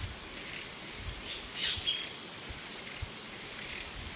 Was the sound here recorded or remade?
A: recorded